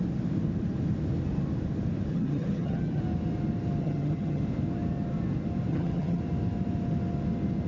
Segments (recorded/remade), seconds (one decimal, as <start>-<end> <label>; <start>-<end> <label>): 0.0-2.1 recorded; 2.1-3.0 remade; 3.0-3.8 recorded; 3.8-4.4 remade; 4.4-5.7 recorded; 5.7-6.2 remade; 6.2-7.7 recorded